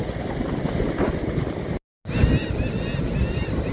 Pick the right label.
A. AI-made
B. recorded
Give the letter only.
B